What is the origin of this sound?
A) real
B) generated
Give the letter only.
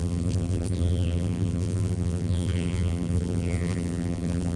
B